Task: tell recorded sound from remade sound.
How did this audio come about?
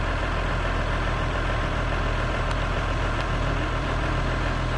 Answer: remade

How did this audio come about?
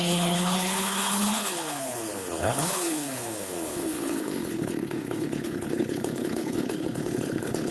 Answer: remade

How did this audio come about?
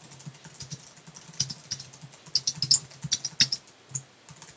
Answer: recorded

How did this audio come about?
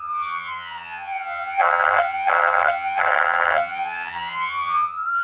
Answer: remade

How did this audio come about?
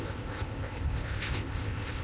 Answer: remade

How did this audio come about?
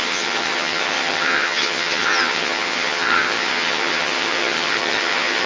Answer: remade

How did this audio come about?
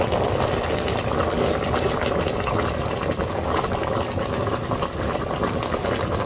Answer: recorded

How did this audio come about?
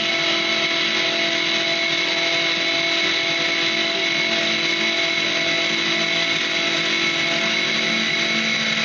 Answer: recorded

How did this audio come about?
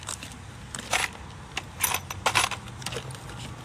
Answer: recorded